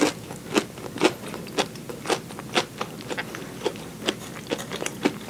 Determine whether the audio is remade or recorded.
recorded